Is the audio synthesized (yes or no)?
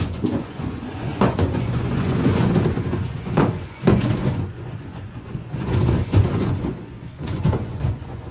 yes